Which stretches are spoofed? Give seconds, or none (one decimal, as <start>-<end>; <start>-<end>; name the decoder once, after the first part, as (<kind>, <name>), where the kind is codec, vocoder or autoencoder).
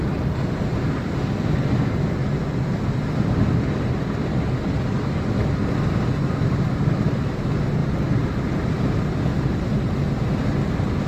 none